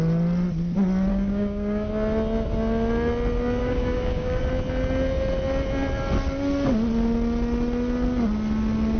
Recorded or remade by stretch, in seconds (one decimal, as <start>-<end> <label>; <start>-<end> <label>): 0.0-1.1 recorded; 1.1-1.9 remade; 1.9-3.6 recorded; 3.6-4.4 remade; 4.4-9.0 recorded